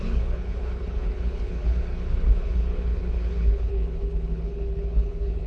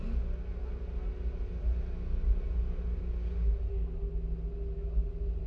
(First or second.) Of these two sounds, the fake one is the first